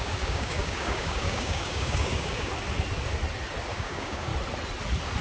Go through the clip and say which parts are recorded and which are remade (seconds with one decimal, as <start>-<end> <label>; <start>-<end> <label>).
0.0-2.5 remade; 2.5-3.7 recorded; 3.7-4.3 remade; 4.3-5.2 recorded